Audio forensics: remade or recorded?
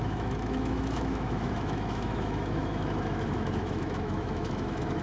remade